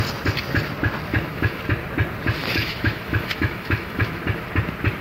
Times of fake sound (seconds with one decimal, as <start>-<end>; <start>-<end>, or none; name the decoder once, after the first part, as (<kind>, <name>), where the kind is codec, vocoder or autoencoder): 1.1-1.6 (autoencoder, DAC-VAE); 2.4-4.2